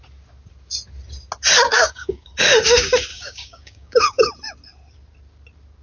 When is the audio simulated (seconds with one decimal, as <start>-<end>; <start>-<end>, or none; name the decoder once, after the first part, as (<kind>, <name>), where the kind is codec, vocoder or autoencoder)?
1.7-2.3 (codec, DAC); 3.1-4.3